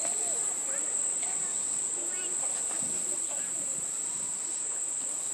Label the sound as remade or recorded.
recorded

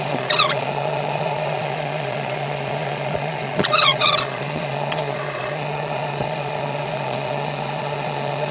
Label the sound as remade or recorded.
remade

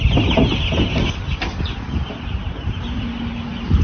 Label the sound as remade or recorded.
recorded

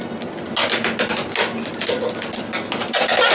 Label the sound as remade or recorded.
recorded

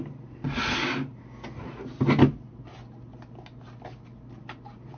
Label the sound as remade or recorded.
recorded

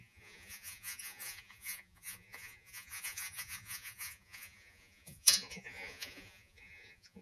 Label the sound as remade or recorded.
remade